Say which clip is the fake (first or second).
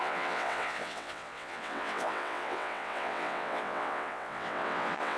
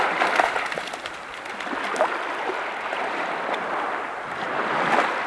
first